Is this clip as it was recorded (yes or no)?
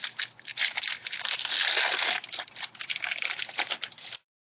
yes